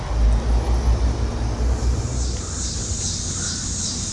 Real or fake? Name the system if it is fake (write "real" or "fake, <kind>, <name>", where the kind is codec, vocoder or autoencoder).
real